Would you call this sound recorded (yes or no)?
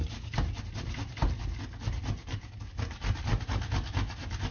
yes